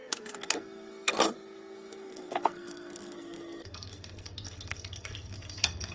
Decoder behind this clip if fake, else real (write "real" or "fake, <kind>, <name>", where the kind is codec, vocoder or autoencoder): fake, codec, SNAC